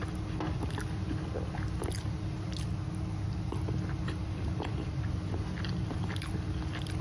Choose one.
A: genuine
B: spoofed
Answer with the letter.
A